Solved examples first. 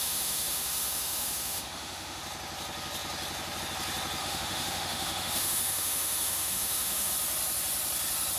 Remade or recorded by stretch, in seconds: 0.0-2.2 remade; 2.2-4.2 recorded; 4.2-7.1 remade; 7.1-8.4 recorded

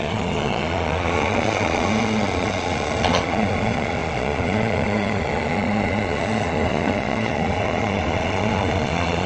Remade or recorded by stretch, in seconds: 0.0-9.3 remade

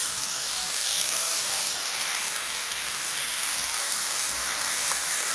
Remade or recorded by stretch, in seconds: 0.0-5.3 remade

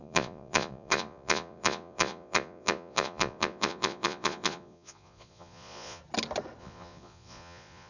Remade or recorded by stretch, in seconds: 0.0-6.0 remade; 6.0-6.6 recorded; 6.6-7.9 remade